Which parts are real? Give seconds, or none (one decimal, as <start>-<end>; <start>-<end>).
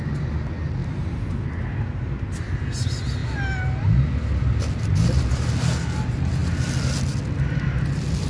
0.0-8.3